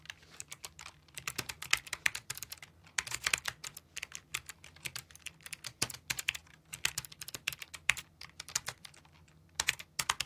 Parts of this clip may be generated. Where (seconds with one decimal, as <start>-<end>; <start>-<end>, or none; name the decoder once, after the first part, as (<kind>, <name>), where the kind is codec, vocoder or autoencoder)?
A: 0.0-4.3 (vocoder, BigVGAN v2); 4.9-6.4; 7.3-10.3